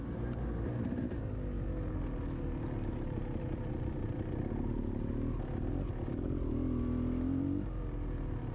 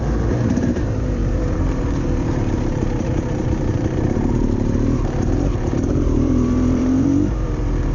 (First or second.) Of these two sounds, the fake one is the second